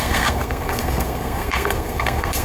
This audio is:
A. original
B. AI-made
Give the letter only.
B